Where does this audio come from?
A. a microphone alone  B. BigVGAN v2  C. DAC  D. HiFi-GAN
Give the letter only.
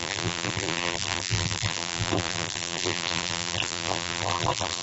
B